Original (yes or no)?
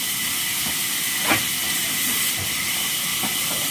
yes